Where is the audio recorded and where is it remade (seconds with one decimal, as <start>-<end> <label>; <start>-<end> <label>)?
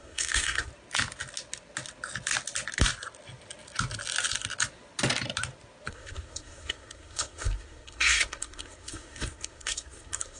0.0-0.7 remade; 0.7-5.9 recorded; 5.9-10.4 remade